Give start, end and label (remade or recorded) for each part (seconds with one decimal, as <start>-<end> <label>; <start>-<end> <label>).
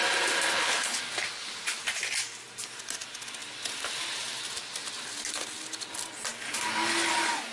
0.0-0.5 recorded; 0.5-1.0 remade; 1.0-7.5 recorded